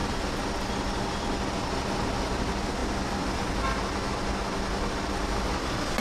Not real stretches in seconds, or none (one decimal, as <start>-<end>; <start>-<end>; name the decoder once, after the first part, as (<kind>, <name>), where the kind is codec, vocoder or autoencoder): 0.0-0.6 (vocoder, BigVGAN v2)